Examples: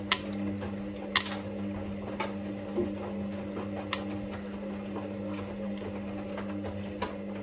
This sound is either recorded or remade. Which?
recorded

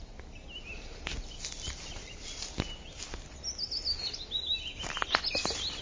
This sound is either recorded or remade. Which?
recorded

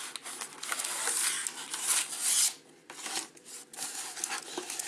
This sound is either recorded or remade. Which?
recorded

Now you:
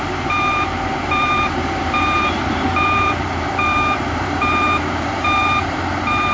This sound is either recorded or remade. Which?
remade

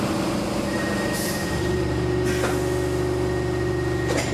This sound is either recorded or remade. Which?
recorded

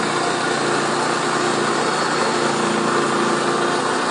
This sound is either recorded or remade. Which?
recorded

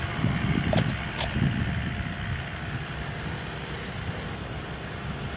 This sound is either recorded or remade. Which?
recorded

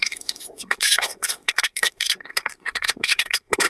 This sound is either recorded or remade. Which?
remade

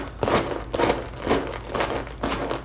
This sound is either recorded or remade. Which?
recorded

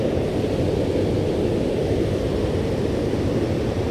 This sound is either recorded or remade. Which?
recorded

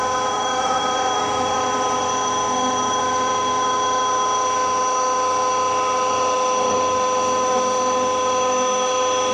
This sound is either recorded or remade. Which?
remade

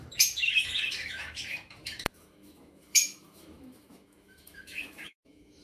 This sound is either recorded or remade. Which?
remade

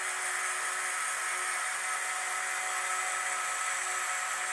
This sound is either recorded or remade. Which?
recorded